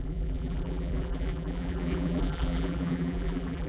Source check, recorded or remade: remade